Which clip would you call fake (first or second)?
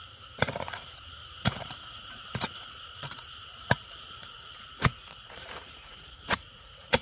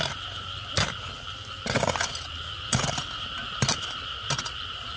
first